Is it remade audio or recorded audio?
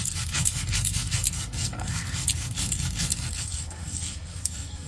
remade